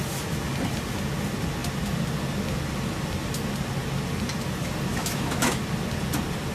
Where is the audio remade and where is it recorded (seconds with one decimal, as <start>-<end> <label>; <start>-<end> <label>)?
0.0-4.9 recorded; 4.9-5.6 remade; 5.6-6.5 recorded